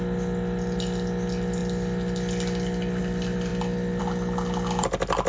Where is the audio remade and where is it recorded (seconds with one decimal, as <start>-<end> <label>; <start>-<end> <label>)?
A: 0.0-5.3 recorded